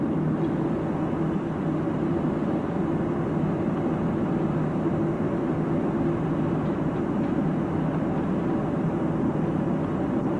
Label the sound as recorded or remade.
recorded